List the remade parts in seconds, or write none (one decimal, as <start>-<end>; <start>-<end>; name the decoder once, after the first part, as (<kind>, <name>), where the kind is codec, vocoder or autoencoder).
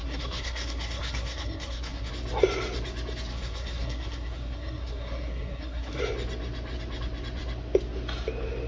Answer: 0.0-2.1 (codec, SNAC); 3.3-6.0